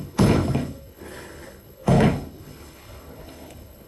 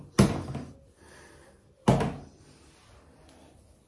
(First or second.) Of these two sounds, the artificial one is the first